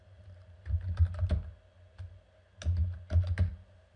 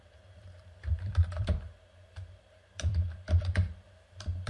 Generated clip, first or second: second